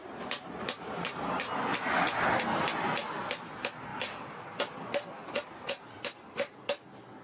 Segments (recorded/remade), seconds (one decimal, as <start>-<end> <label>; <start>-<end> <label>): 0.0-1.3 remade; 1.3-3.9 recorded; 3.9-6.7 remade; 6.7-7.2 recorded